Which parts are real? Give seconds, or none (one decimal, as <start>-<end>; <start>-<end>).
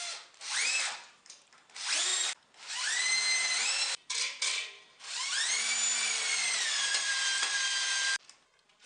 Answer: 2.1-2.7